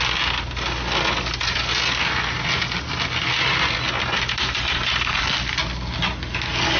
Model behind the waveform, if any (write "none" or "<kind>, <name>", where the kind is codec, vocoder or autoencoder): none